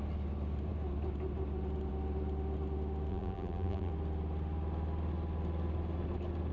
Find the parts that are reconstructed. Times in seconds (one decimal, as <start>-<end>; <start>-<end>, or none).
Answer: 3.1-3.9